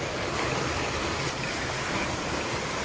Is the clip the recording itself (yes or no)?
yes